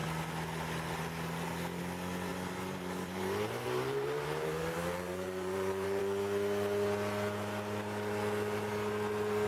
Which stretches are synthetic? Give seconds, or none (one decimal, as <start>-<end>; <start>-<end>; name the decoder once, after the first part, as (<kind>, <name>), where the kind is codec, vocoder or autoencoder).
2.3-6.0 (vocoder, BigVGAN v2)